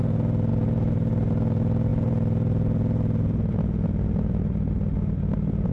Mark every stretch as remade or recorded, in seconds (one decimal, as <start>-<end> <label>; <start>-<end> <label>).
0.0-5.7 recorded